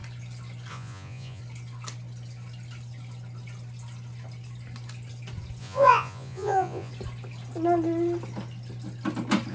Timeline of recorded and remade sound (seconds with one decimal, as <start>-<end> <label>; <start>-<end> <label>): 0.0-0.7 recorded; 0.7-1.4 remade; 1.4-5.6 recorded; 5.6-6.9 remade; 6.9-9.5 recorded